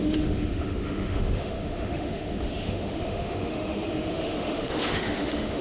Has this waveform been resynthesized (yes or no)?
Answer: yes